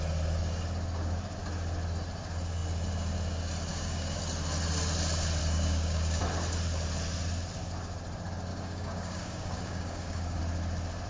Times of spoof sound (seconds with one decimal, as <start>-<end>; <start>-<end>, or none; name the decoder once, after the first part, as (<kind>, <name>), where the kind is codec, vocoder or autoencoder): 3.7-4.2 (codec, DAC); 5.4-6.2; 8.5-10.4